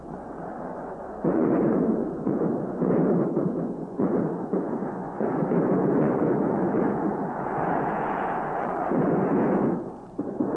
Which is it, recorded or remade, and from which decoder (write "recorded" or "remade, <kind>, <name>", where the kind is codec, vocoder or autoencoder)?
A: remade, vocoder, Vocos